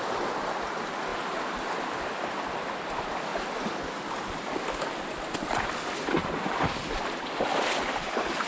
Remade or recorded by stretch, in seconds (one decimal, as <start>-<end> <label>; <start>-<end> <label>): 0.0-8.5 recorded